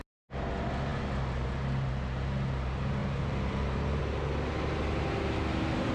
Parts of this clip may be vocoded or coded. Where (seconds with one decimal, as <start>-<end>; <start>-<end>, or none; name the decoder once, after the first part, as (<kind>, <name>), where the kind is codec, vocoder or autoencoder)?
3.0-4.0 (vocoder, BigVGAN v2)